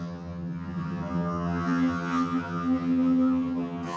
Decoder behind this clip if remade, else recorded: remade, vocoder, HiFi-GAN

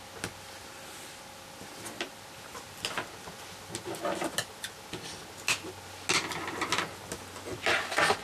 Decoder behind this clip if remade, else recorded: recorded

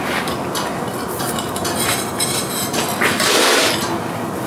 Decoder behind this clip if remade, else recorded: recorded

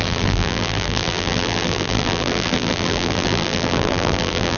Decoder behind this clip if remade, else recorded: remade, vocoder, BigVGAN v2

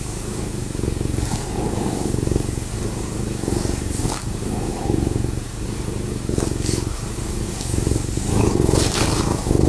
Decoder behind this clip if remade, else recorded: remade, codec, DAC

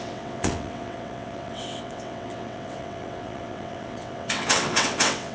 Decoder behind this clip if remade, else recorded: remade, vocoder, WaveNeXt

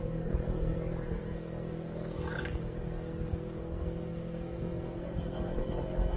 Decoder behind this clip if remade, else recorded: remade, codec, SNAC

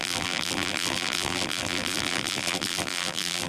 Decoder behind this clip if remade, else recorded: remade, vocoder, BigVGAN v2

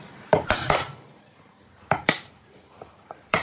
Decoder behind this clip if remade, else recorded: remade, vocoder, BigVGAN v2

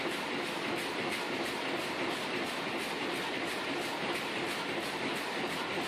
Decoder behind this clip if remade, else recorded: remade, vocoder, BigVGAN v2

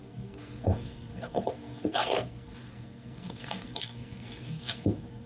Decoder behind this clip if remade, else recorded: remade, codec, SNAC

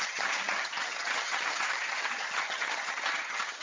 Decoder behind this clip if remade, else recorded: remade, vocoder, HiFi-GAN